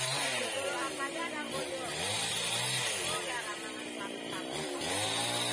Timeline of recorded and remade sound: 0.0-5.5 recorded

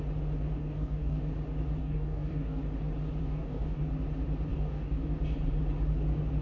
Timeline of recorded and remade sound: 0.0-0.6 recorded; 0.6-1.2 remade; 1.2-1.8 recorded; 1.8-2.6 remade; 2.6-3.2 recorded; 3.2-3.8 remade; 3.8-4.5 recorded; 4.5-5.2 remade; 5.2-6.4 recorded

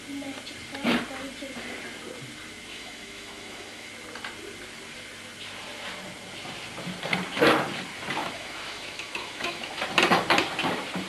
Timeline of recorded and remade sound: 0.0-2.7 recorded; 2.7-3.9 remade; 3.9-8.2 recorded; 8.2-9.8 remade; 9.8-11.1 recorded

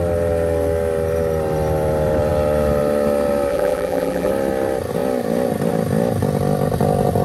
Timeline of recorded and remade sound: 0.0-3.5 recorded; 3.5-4.3 remade; 4.3-7.2 recorded

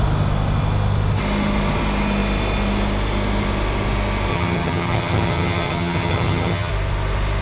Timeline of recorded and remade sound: 0.0-4.3 recorded; 4.3-6.7 remade; 6.7-7.4 recorded

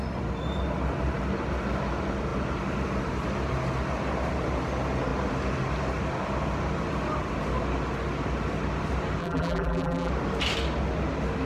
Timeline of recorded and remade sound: 0.0-9.2 recorded; 9.2-10.1 remade; 10.1-11.5 recorded

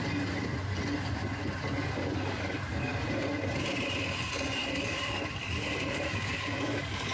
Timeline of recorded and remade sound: 0.0-1.9 recorded; 1.9-2.9 remade; 2.9-4.7 recorded; 4.7-7.1 remade